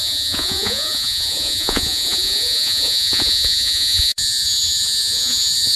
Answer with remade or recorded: remade